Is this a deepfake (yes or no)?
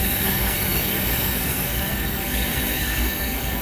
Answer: yes